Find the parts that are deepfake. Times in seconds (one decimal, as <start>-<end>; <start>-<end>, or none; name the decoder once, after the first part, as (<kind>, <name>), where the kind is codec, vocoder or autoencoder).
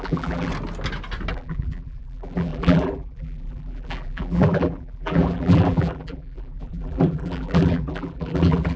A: 0.0-0.5 (vocoder, BigVGAN v2); 1.3-8.8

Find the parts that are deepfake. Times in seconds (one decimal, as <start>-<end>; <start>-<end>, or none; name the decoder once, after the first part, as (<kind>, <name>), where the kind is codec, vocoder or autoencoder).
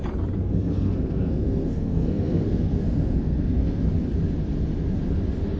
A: 0.4-3.8 (codec, SNAC)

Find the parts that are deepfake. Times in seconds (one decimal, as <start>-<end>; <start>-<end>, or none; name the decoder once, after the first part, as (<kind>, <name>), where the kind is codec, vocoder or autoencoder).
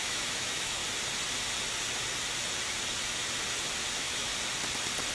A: 0.0-0.8 (autoencoder, DAC-VAE); 3.9-4.3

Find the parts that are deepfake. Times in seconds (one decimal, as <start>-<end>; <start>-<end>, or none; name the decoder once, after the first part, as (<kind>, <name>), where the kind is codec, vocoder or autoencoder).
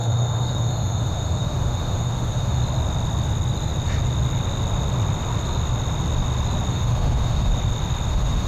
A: 0.0-2.6 (autoencoder, DAC-VAE); 6.7-7.5; 8.1-8.5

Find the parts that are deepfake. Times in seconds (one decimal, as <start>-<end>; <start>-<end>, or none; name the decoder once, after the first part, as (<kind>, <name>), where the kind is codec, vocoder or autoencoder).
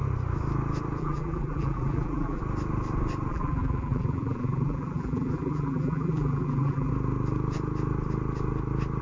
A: 1.0-2.4 (vocoder, BigVGAN v2); 3.3-6.9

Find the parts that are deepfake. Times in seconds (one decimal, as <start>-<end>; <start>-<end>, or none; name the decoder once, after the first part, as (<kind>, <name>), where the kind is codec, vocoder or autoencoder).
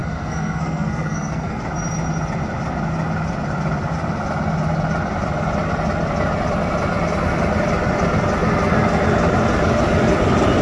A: 0.0-1.6 (codec, SNAC)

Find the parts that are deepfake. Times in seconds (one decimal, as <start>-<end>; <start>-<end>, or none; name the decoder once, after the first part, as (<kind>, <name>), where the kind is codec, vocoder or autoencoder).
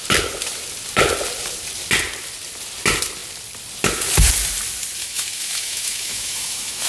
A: 5.0-6.9 (autoencoder, DAC-VAE)